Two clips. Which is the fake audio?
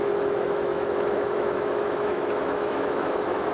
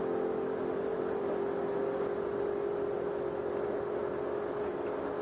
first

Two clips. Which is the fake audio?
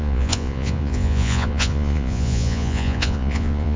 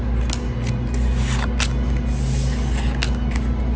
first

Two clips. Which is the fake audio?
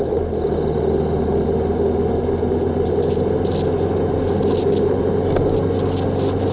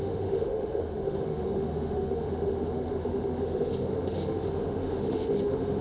second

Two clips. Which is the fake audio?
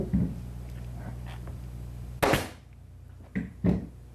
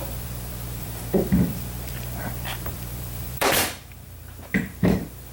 second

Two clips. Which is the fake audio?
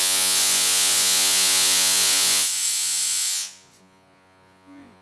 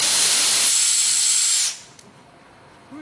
first